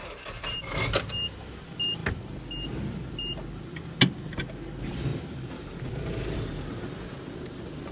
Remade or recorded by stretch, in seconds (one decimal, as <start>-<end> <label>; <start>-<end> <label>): 0.0-0.6 remade; 0.6-5.1 recorded; 5.1-5.8 remade; 5.8-7.9 recorded

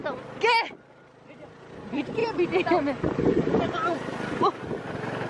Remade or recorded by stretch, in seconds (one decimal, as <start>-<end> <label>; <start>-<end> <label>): 0.0-1.6 recorded; 1.6-5.3 remade

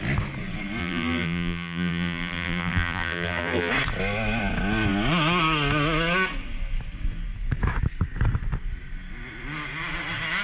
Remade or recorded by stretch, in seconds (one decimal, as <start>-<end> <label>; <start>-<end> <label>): 0.0-0.8 recorded; 0.8-3.7 remade; 3.7-10.4 recorded

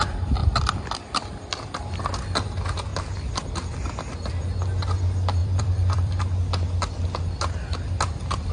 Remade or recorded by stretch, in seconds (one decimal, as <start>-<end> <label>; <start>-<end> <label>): 0.0-0.4 recorded; 0.4-1.9 remade; 1.9-5.4 recorded; 5.4-6.2 remade; 6.2-8.5 recorded

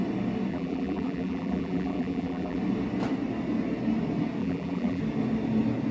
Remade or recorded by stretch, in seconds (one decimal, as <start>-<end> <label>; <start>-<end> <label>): 0.0-0.5 recorded; 0.5-2.6 remade; 2.6-4.4 recorded; 4.4-5.0 remade; 5.0-5.9 recorded

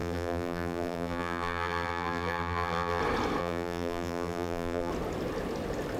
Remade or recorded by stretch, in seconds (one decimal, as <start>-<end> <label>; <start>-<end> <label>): 0.0-3.0 remade; 3.0-3.4 recorded; 3.4-4.9 remade; 4.9-6.0 recorded